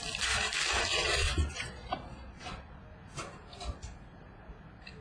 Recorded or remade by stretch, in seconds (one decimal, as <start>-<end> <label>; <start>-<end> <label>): 0.0-0.9 recorded; 0.9-2.8 remade; 2.8-5.0 recorded